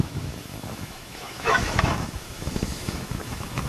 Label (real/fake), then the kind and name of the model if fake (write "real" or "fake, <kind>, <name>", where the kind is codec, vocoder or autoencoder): fake, autoencoder, DAC-VAE